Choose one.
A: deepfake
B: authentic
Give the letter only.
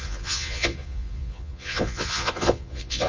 A